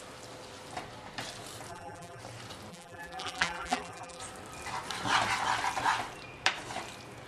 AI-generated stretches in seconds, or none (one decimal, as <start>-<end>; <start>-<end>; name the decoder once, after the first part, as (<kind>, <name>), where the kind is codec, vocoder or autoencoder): 1.7-2.2 (vocoder, BigVGAN v2); 2.7-4.2